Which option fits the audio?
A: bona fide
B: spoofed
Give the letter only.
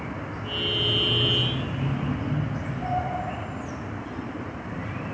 A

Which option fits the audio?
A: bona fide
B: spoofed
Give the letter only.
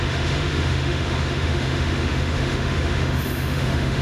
B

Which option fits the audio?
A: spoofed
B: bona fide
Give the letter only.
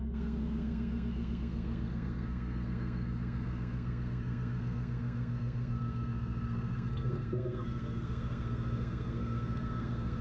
A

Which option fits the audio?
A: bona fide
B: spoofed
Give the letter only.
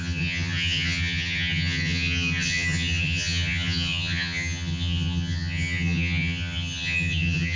B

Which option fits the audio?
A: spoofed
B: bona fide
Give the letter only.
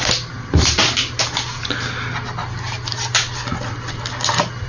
B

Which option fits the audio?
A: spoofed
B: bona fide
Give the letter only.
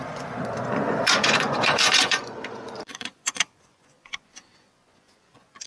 A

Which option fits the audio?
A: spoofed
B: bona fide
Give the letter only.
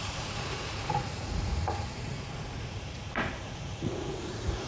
A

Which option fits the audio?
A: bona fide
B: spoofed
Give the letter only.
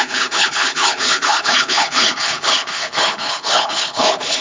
B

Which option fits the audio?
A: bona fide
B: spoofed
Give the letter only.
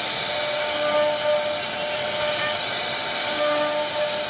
A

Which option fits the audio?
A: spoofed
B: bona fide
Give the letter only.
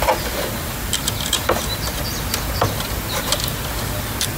B